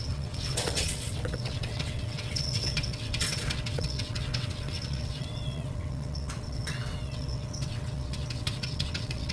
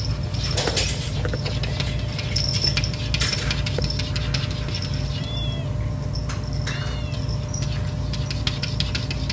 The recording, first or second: second